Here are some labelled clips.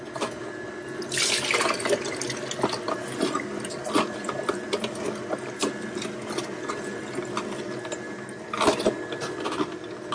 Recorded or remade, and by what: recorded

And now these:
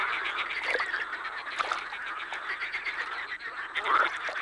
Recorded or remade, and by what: remade, vocoder, BigVGAN v2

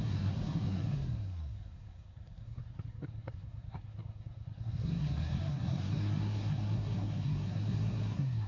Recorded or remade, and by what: remade, codec, SNAC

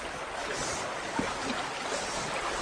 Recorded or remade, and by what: recorded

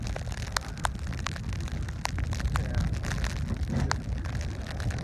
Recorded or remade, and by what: recorded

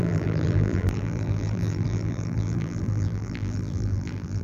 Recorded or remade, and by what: remade, vocoder, BigVGAN v2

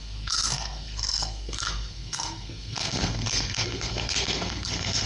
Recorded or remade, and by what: remade, codec, SNAC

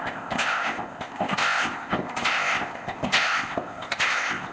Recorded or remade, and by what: remade, codec, ZipCodec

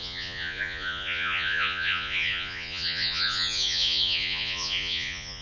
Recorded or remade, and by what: remade, vocoder, Vocos